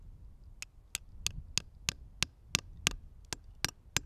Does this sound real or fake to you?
real